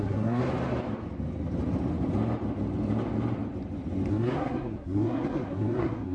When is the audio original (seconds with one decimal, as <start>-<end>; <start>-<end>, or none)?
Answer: 0.4-4.1